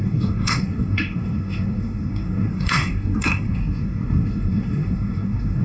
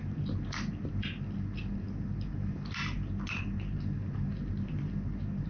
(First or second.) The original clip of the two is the second